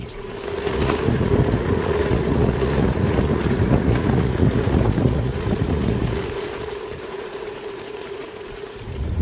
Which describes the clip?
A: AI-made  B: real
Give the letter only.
A